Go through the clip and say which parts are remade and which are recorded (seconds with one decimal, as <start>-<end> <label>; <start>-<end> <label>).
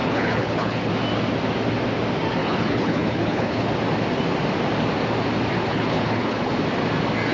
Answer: 0.0-0.9 remade; 0.9-2.4 recorded; 2.4-3.7 remade; 3.7-5.7 recorded; 5.7-6.5 remade; 6.5-7.3 recorded